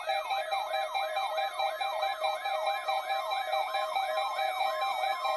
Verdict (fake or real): fake